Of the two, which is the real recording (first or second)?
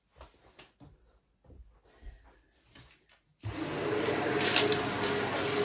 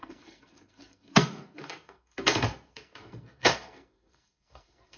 first